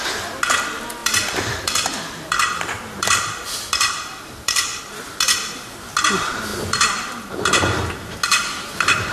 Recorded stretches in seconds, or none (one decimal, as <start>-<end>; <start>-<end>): 0.0-1.0; 4.8-6.5; 7.2-8.3